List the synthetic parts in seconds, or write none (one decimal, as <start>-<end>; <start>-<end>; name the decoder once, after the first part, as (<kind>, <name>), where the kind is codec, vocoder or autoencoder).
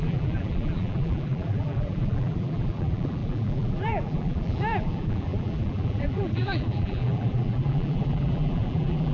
0.0-9.1 (vocoder, BigVGAN v2)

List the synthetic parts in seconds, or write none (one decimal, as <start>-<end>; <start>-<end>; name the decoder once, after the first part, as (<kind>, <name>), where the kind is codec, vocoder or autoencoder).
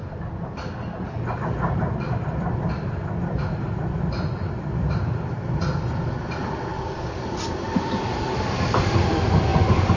0.0-9.5 (vocoder, BigVGAN v2)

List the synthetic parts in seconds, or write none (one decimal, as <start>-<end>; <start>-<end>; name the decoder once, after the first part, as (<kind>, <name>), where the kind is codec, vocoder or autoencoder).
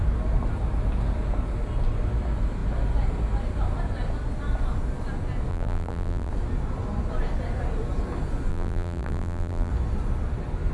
5.5-6.3 (vocoder, BigVGAN v2); 8.5-9.7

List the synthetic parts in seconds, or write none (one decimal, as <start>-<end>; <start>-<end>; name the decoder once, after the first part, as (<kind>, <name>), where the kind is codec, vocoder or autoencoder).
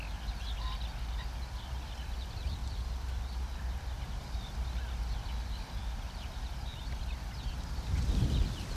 2.6-4.2 (vocoder, BigVGAN v2); 6.7-7.5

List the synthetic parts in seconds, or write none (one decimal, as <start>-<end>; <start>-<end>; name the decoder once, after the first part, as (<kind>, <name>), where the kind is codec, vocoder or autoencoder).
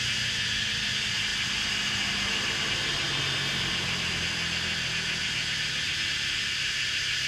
none